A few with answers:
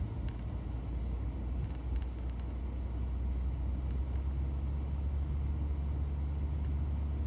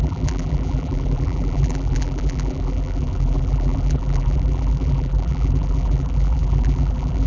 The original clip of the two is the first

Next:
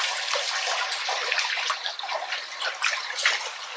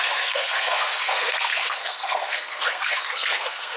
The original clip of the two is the first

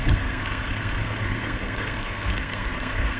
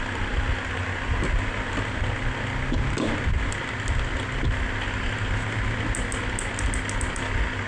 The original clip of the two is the second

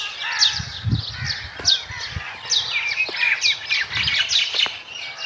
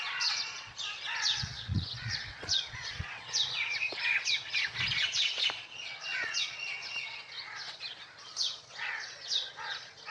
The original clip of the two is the first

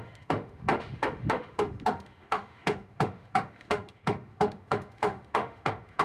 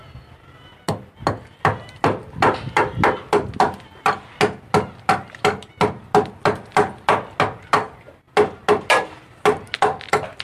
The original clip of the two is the second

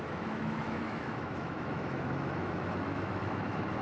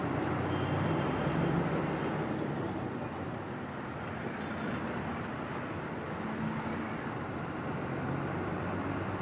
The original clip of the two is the second